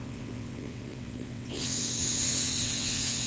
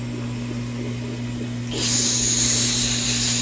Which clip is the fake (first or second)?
first